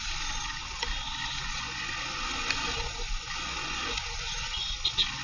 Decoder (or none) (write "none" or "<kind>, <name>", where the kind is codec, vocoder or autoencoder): vocoder, Vocos